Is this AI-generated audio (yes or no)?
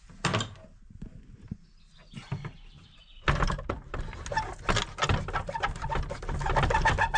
no